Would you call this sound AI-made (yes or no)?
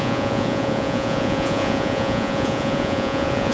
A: yes